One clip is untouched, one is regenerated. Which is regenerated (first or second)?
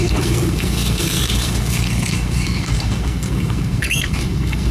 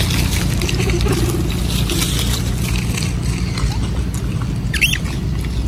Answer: first